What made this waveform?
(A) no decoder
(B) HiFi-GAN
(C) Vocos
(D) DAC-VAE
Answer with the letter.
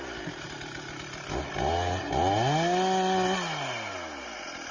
A